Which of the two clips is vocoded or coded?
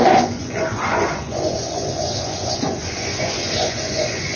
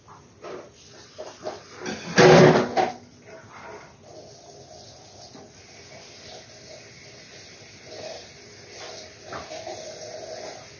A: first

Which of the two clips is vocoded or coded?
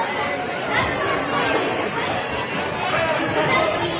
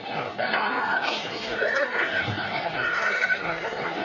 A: second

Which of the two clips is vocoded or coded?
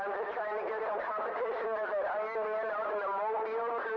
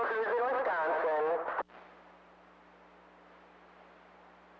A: first